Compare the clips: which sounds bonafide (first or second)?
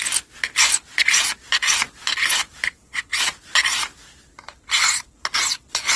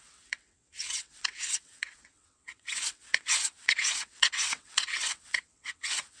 first